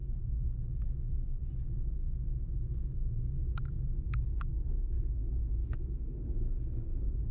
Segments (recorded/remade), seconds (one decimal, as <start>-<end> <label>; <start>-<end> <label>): 0.0-4.0 recorded; 4.0-7.3 remade